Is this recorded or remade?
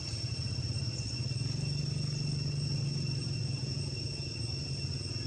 recorded